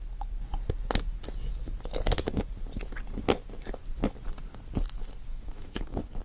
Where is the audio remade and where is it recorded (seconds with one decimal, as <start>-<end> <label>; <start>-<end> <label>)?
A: 0.0-5.3 recorded; 5.3-6.2 remade